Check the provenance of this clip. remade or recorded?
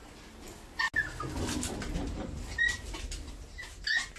recorded